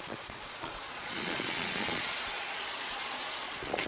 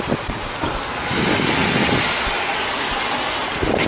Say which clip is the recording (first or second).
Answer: second